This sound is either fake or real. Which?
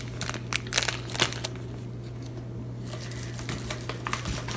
real